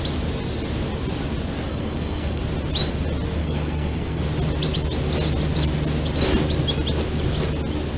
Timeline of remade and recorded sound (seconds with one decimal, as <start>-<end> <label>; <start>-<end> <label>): 0.0-1.7 recorded; 1.7-2.4 remade; 2.4-3.4 recorded; 3.4-4.2 remade; 4.2-8.0 recorded